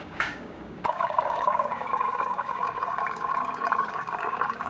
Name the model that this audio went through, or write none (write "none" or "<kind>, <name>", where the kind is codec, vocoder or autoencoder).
codec, DAC